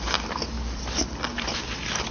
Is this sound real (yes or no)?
no